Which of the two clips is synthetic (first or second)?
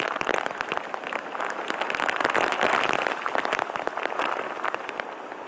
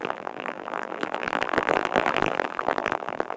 second